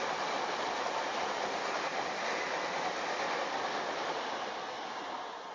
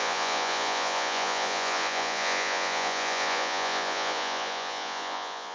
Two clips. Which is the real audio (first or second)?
first